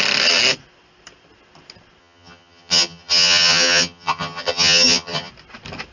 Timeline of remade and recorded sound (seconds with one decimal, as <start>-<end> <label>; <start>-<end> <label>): 0.0-2.0 recorded; 2.0-5.3 remade; 5.3-5.9 recorded